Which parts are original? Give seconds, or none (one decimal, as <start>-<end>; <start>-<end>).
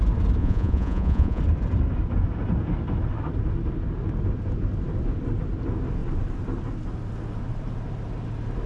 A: 0.0-0.4; 1.4-8.7